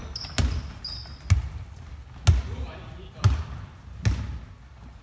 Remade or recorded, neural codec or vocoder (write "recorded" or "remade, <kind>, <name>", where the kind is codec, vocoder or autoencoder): recorded